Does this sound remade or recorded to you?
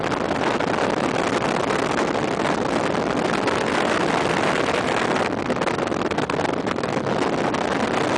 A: recorded